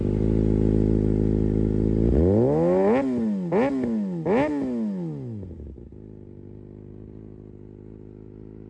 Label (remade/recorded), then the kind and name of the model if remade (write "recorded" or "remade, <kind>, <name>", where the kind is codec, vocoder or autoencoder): recorded